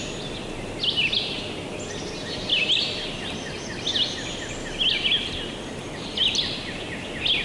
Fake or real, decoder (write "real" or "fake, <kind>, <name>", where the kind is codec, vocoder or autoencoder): real